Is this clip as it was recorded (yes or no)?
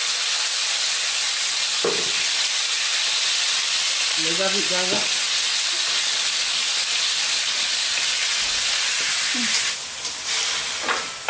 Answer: yes